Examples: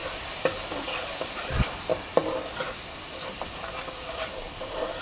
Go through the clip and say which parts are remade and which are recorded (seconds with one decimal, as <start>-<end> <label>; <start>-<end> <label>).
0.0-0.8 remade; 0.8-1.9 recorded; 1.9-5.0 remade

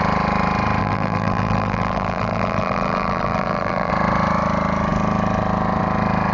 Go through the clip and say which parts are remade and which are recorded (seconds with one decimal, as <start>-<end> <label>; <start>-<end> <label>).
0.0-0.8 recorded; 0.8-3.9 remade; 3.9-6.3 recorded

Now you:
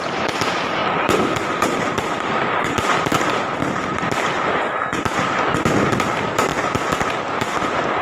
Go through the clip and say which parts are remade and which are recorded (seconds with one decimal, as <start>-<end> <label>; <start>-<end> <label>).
0.0-6.5 recorded; 6.5-7.2 remade; 7.2-8.0 recorded